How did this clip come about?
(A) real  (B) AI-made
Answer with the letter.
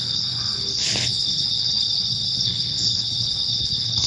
B